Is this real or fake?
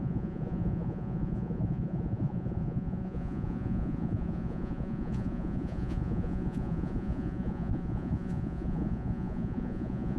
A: fake